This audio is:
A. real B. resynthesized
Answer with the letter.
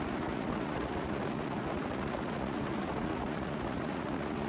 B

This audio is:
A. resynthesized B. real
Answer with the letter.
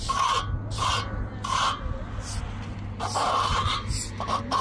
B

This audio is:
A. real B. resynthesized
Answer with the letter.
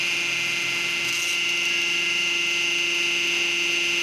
A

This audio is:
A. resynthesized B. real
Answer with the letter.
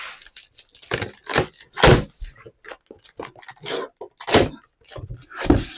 B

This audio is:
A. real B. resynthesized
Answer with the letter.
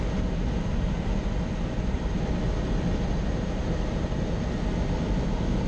A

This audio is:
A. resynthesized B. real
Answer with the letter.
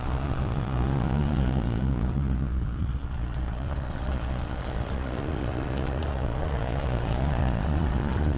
A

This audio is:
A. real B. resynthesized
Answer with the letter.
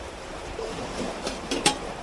B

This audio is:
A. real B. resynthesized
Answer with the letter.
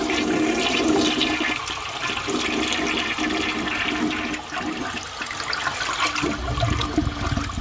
A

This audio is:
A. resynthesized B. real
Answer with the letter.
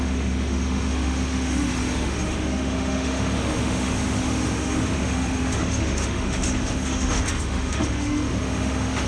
A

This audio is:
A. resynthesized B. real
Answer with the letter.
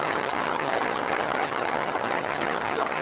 A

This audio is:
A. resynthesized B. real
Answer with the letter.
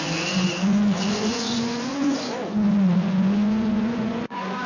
A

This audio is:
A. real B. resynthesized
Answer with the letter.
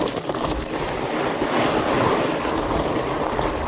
A